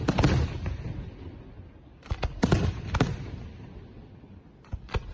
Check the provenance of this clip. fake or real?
real